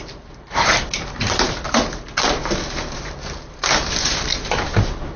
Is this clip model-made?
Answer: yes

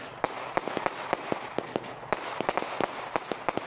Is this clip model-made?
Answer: no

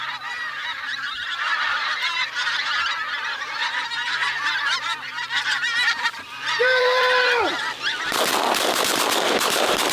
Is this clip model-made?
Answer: yes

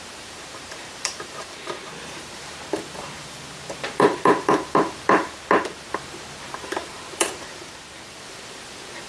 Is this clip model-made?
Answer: yes